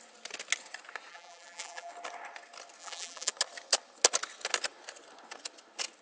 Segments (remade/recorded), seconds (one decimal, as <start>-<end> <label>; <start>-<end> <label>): 0.0-1.1 recorded; 1.1-1.9 remade; 1.9-2.8 recorded; 2.8-3.3 remade; 3.3-6.0 recorded